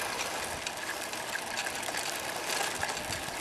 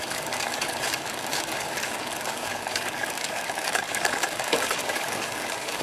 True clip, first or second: first